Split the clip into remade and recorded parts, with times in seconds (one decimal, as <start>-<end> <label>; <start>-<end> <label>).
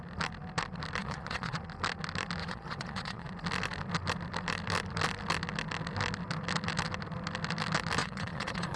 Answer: 0.0-1.0 recorded; 1.0-1.6 remade; 1.6-2.4 recorded; 2.4-3.3 remade; 3.3-8.0 recorded; 8.0-8.8 remade